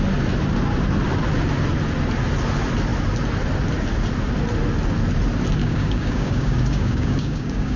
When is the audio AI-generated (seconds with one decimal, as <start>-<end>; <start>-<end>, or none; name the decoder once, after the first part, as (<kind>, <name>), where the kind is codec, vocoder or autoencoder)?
5.6-7.8 (codec, DAC)